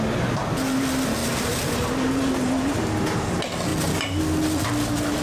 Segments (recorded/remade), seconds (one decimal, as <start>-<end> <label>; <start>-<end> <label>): 0.0-1.2 recorded; 1.2-2.9 remade; 2.9-5.2 recorded